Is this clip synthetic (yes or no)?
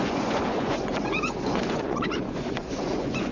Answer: yes